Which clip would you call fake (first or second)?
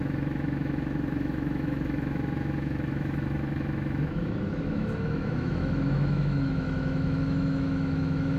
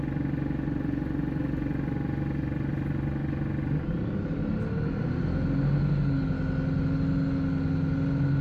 first